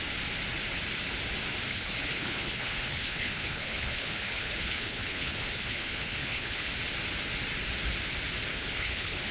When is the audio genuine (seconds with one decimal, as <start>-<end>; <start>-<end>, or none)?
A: 0.0-1.7; 6.7-8.5